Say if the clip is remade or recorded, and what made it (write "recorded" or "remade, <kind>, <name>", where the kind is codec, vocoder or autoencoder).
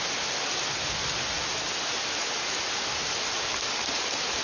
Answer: recorded